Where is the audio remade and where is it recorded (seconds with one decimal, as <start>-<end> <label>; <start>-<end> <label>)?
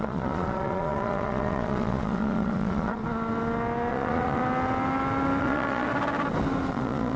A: 0.0-3.0 remade; 3.0-3.9 recorded; 3.9-4.4 remade; 4.4-5.4 recorded; 5.4-5.9 remade; 5.9-6.7 recorded; 6.7-7.2 remade